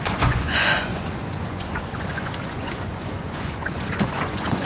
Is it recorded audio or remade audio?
remade